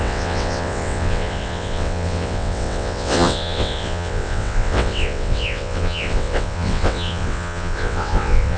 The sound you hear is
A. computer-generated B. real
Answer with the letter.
A